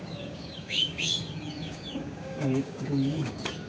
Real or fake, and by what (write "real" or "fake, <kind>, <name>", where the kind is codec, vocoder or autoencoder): fake, codec, DAC